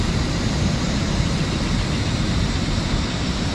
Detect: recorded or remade recorded